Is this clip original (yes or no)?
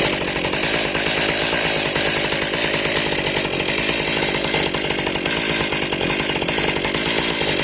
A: yes